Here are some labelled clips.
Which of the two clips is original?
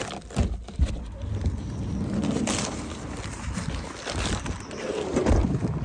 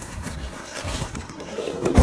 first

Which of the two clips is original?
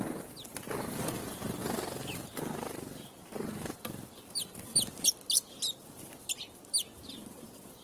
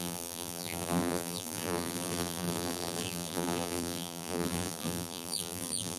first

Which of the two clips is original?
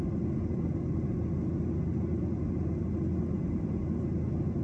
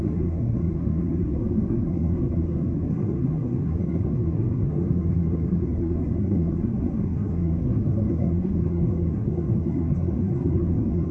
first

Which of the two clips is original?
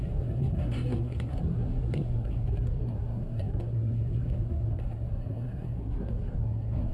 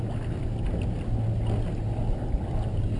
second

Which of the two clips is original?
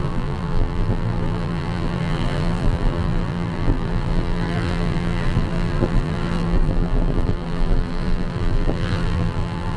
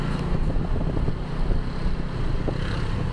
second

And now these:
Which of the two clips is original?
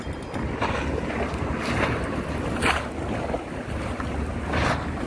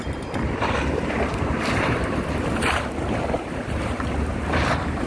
first